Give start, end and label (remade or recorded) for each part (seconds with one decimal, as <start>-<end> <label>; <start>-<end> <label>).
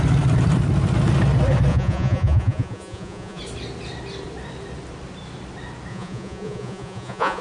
0.0-1.7 recorded; 1.7-3.4 remade; 3.4-5.9 recorded; 5.9-7.4 remade